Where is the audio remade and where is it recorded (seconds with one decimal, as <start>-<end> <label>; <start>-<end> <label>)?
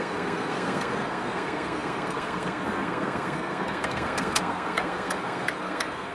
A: 0.0-6.1 remade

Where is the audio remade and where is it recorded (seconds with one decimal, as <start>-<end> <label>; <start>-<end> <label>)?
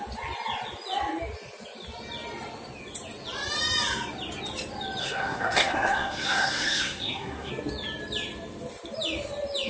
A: 0.0-5.0 recorded; 5.0-7.5 remade; 7.5-9.7 recorded